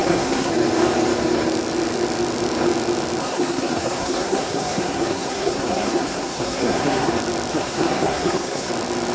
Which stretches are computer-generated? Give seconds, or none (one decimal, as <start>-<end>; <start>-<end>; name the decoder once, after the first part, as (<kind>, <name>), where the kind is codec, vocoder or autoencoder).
0.0-0.5 (codec, SNAC); 3.2-7.1; 7.5-8.7